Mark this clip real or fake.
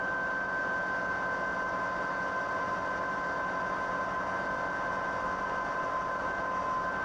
real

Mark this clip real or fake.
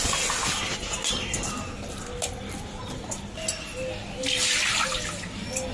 real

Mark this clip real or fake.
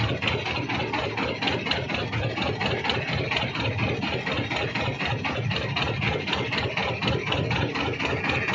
real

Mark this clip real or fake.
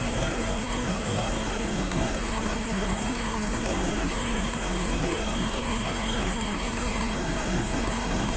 fake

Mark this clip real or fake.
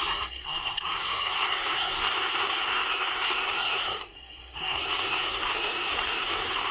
fake